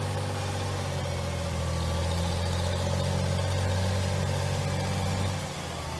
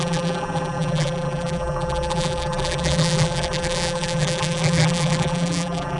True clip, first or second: first